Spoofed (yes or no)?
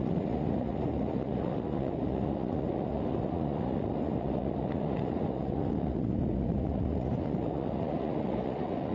yes